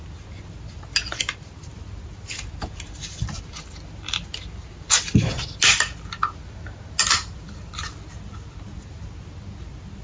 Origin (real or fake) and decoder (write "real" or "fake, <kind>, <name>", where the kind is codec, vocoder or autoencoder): real